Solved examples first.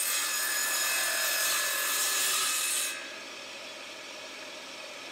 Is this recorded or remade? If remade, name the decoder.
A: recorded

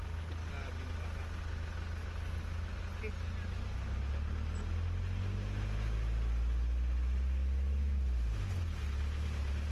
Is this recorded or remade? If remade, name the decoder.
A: recorded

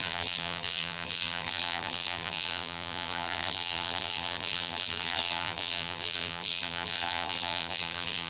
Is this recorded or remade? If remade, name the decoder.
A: remade, vocoder, BigVGAN v2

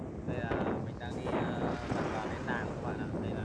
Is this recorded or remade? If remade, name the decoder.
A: recorded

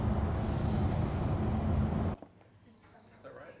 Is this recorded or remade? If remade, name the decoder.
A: recorded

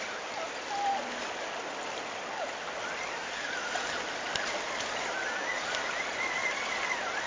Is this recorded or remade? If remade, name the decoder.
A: recorded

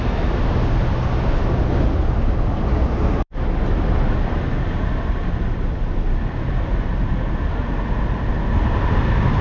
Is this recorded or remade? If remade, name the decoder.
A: recorded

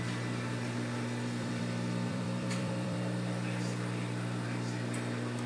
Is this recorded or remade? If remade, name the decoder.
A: remade, vocoder, BigVGAN v2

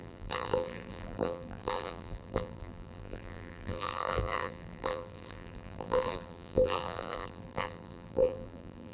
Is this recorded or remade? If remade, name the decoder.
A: remade, vocoder, BigVGAN v2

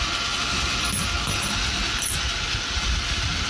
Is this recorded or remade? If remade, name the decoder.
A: recorded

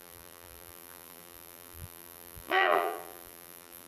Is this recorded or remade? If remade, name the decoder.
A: remade, vocoder, BigVGAN v2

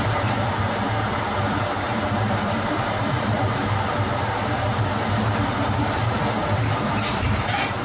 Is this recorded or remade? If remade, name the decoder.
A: remade, vocoder, BigVGAN v2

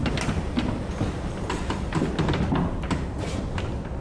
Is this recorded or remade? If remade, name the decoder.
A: recorded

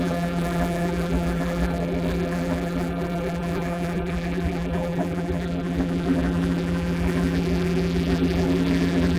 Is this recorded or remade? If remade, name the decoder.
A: remade, vocoder, BigVGAN v2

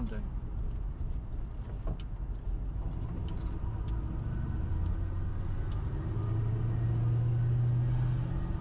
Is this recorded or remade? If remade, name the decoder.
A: recorded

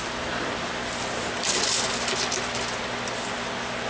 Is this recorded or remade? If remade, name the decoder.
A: recorded